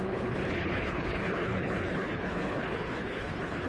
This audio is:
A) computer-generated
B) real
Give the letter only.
A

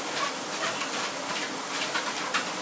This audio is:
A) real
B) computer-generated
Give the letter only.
A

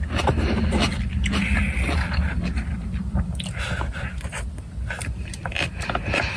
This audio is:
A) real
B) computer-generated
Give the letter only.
A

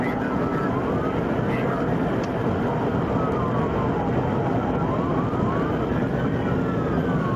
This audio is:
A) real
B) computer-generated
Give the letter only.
A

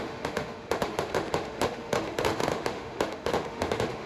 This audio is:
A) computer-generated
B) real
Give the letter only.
A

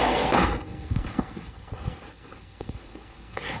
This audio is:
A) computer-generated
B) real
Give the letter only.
A